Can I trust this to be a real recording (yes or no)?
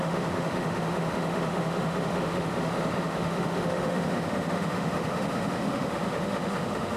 no